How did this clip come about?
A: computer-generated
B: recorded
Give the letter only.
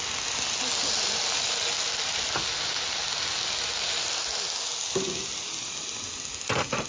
B